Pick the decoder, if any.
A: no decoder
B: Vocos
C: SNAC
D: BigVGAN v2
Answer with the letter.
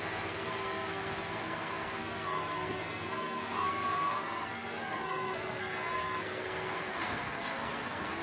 C